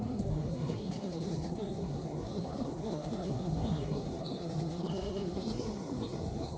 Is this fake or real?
fake